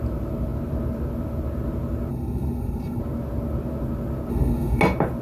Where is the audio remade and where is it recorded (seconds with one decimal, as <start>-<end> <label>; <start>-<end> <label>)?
0.0-2.1 recorded; 2.1-3.0 remade; 3.0-4.3 recorded; 4.3-4.8 remade; 4.8-5.2 recorded